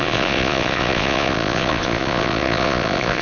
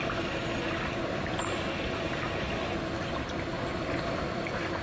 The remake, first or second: first